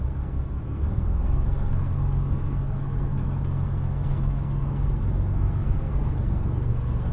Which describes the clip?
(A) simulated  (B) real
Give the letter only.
A